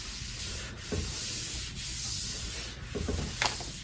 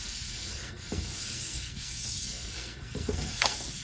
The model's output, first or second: second